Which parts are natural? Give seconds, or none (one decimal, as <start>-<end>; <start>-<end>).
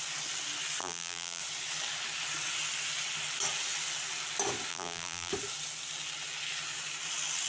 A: 0.0-0.8; 1.4-4.7; 5.3-7.5